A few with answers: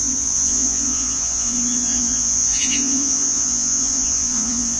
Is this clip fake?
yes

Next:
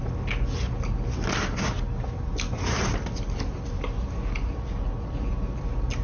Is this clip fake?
no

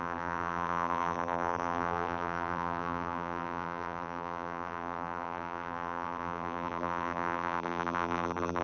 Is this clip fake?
yes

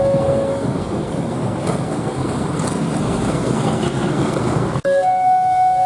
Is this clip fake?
yes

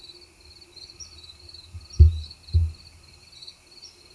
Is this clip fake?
no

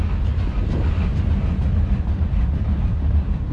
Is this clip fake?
no